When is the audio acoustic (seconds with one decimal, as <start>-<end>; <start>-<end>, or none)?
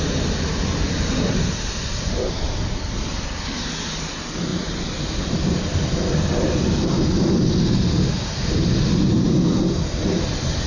0.0-10.7